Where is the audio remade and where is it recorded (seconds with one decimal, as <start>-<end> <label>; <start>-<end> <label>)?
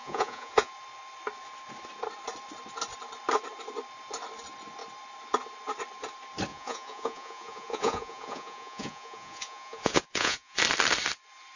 0.0-0.7 remade; 0.7-6.5 recorded; 6.5-10.6 remade; 10.6-11.6 recorded